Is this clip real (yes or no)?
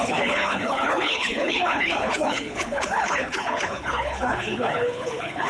no